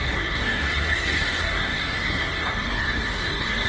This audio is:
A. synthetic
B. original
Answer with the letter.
A